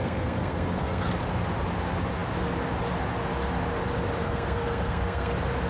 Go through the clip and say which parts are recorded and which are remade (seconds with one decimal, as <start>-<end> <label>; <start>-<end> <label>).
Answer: 0.0-1.1 remade; 1.1-4.2 recorded; 4.2-5.3 remade; 5.3-5.7 recorded